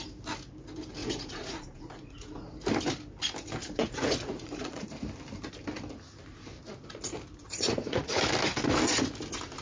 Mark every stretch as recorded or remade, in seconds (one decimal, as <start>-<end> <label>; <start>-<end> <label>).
0.0-1.0 recorded; 1.0-2.5 remade; 2.5-3.6 recorded; 3.6-4.8 remade; 4.8-7.4 recorded; 7.4-8.2 remade; 8.2-9.6 recorded